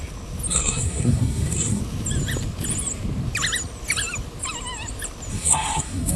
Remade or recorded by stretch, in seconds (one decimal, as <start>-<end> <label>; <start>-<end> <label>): 0.0-0.5 recorded; 0.5-1.8 remade; 1.8-5.3 recorded; 5.3-6.2 remade